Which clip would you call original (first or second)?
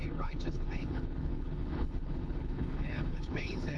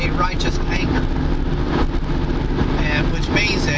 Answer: second